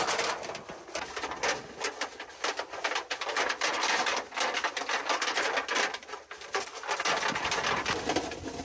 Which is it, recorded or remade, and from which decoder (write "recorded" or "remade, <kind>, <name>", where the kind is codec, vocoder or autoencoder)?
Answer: recorded